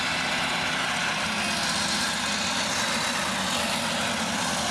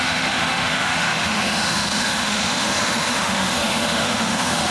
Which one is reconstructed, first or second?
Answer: second